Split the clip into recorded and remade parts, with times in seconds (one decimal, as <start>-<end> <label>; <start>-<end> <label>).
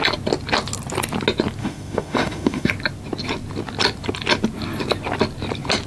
0.0-1.6 recorded; 1.6-2.7 remade; 2.7-5.9 recorded